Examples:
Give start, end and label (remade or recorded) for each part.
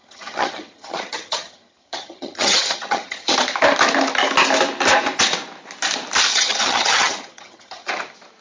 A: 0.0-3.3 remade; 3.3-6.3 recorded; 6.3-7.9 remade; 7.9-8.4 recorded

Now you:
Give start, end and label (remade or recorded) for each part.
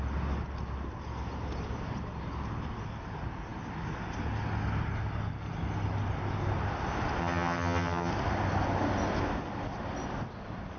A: 0.0-7.2 recorded; 7.2-8.1 remade; 8.1-10.8 recorded